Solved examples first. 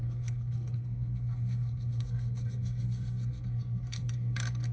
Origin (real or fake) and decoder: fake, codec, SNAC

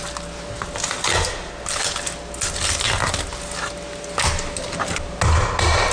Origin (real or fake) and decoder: real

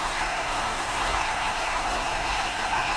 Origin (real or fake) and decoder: fake, codec, SNAC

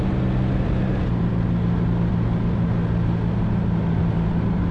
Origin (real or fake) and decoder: real